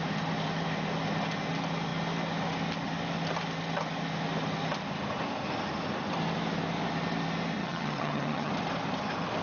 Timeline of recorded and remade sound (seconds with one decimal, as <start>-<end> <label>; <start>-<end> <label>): 0.0-7.6 recorded; 7.6-8.5 remade; 8.5-9.4 recorded